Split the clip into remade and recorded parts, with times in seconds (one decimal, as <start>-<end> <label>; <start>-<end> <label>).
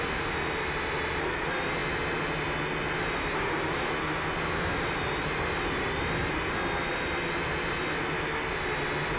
0.0-9.2 recorded